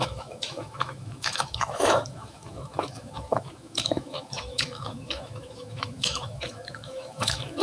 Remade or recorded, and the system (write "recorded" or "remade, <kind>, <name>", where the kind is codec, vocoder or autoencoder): remade, autoencoder, DAC-VAE